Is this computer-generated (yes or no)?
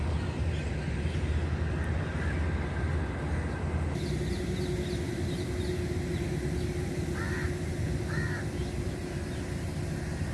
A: no